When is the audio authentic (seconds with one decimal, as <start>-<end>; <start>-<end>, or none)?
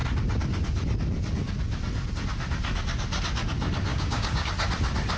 0.0-3.9; 4.5-5.2